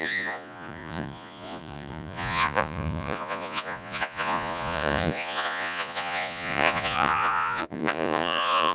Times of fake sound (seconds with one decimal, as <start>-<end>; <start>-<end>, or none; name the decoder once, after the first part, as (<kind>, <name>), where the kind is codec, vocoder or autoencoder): 0.0-8.7 (vocoder, Vocos)